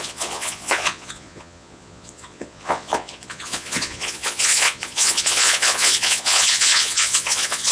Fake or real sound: fake